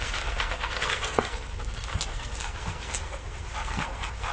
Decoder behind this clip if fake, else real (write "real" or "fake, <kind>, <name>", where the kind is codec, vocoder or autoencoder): fake, codec, SNAC